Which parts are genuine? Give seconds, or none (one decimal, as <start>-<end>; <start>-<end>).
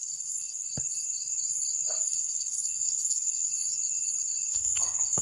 0.7-2.0; 3.5-4.5